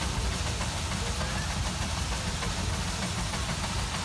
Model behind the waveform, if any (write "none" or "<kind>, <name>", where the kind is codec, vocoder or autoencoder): none